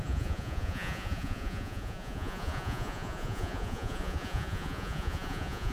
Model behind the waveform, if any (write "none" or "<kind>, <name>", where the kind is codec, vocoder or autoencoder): vocoder, Vocos